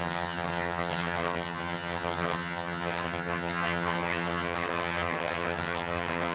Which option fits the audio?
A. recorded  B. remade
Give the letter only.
B